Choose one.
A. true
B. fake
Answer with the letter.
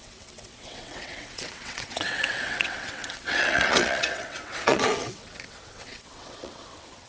B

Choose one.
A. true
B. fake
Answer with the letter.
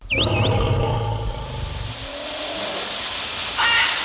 A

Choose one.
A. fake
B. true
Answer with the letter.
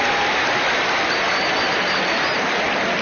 B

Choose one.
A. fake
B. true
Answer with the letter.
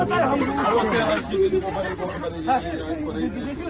B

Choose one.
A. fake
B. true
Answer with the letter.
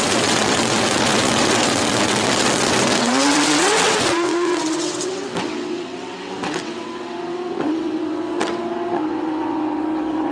A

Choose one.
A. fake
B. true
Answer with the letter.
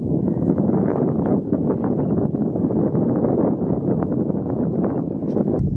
B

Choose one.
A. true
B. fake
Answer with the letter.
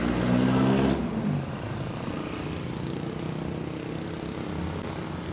A